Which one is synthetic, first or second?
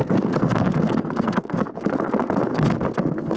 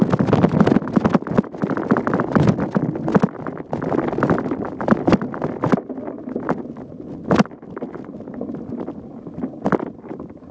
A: first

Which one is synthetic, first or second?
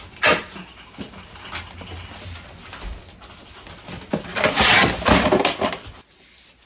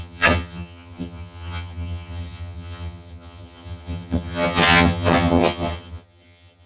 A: second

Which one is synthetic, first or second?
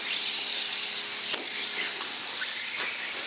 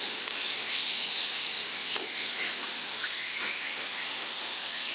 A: second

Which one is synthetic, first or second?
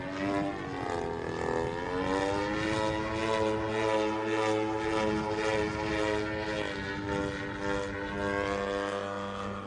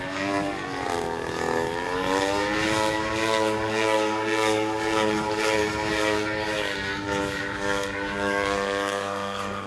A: second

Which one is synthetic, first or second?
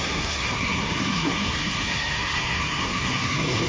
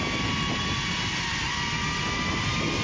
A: first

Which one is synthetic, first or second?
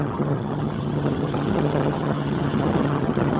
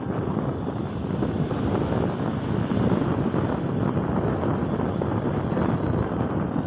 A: first